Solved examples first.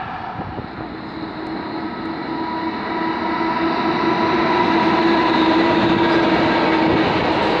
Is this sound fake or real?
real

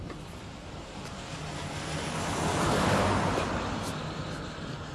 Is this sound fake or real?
real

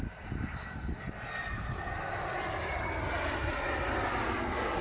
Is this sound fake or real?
real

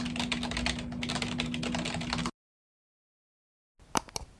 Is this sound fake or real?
real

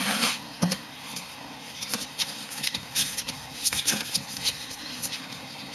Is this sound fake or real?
fake